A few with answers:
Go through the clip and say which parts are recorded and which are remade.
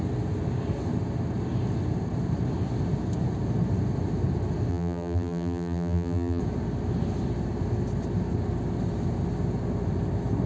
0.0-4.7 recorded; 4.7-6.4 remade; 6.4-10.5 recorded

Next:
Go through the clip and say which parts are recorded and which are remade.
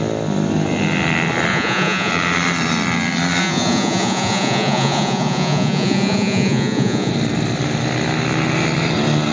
0.0-1.5 recorded; 1.5-2.1 remade; 2.1-3.4 recorded; 3.4-7.1 remade; 7.1-9.3 recorded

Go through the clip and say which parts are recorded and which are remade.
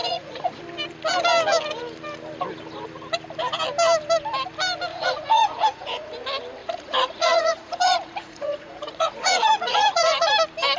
0.0-0.6 remade; 0.6-4.9 recorded; 4.9-6.1 remade; 6.1-6.6 recorded; 6.6-10.3 remade; 10.3-10.8 recorded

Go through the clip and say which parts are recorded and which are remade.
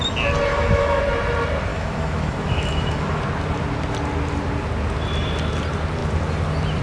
0.0-0.5 recorded; 0.5-1.0 remade; 1.0-1.7 recorded; 1.7-3.2 remade; 3.2-6.8 recorded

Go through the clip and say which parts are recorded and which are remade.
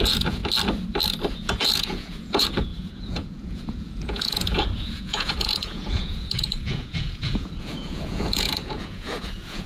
0.0-0.4 remade; 0.4-1.3 recorded; 1.3-9.7 remade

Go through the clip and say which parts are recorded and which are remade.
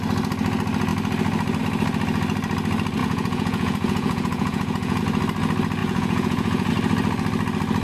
0.0-3.0 recorded; 3.0-5.0 remade; 5.0-5.8 recorded; 5.8-6.7 remade; 6.7-7.8 recorded